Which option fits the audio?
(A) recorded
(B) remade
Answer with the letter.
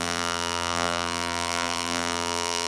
B